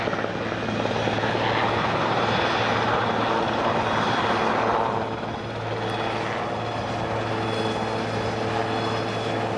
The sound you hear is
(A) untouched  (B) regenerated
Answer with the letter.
A